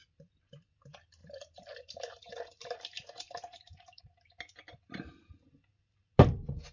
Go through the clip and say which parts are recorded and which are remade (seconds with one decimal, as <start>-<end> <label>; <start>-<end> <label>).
0.0-1.2 recorded; 1.2-4.0 remade; 4.0-6.7 recorded